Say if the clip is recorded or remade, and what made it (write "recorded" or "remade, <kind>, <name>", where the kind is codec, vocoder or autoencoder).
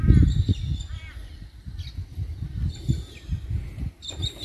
recorded